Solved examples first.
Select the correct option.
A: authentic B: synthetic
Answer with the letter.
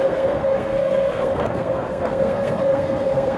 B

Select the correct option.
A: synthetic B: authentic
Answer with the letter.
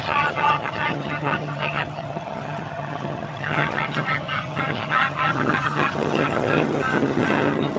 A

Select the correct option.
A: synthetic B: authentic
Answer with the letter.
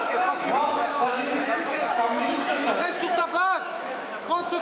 A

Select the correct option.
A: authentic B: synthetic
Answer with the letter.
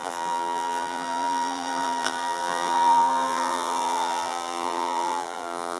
B